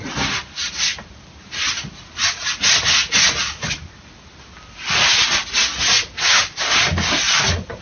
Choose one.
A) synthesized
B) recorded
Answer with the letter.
B